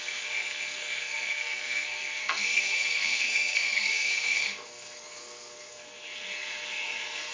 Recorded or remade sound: remade